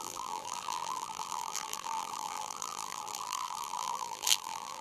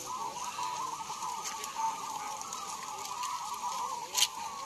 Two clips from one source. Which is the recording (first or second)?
second